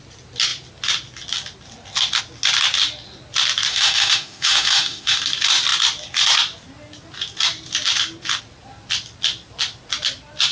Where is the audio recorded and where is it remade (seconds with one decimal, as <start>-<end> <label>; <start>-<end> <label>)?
0.0-3.7 recorded; 3.7-5.2 remade; 5.2-10.5 recorded